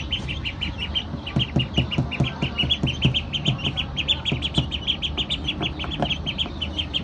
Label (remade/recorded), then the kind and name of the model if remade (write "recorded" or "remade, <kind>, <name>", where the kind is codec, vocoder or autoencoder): recorded